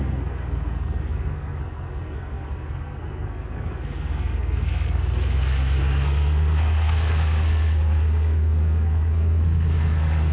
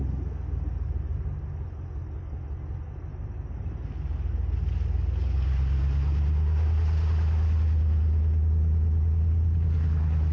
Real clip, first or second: second